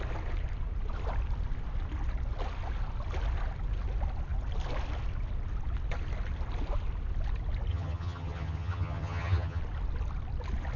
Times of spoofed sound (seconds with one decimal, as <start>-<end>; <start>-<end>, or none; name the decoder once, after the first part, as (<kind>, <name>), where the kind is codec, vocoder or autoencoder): 7.7-9.6 (vocoder, HiFi-GAN)